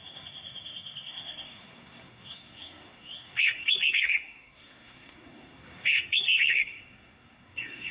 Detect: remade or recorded remade